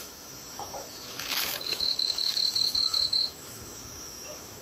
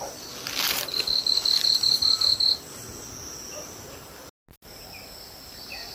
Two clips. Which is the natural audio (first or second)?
second